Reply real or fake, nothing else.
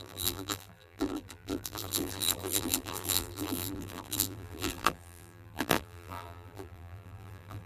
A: fake